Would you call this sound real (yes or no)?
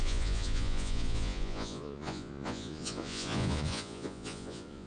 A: no